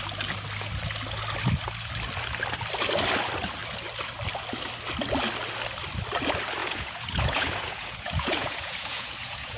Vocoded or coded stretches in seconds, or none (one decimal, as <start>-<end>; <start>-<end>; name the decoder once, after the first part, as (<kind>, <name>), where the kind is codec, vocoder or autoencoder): 6.6-9.6 (vocoder, Vocos)